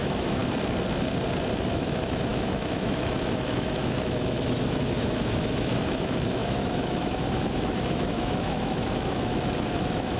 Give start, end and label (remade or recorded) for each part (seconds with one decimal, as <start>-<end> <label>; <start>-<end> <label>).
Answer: 0.0-0.4 remade; 0.4-1.7 recorded; 1.7-10.2 remade